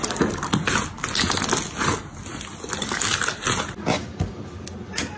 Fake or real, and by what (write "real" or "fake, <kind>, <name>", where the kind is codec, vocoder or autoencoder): real